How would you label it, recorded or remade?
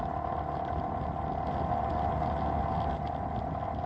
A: recorded